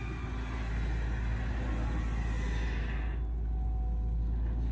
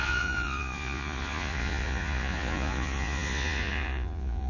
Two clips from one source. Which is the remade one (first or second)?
second